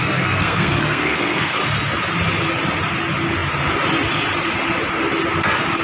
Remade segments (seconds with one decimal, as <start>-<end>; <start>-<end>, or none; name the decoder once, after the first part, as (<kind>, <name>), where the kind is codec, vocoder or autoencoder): 0.0-1.6 (codec, SNAC)